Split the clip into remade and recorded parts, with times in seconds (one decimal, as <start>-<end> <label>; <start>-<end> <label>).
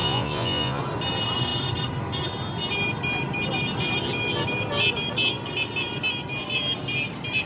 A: 0.0-0.8 remade; 0.8-7.5 recorded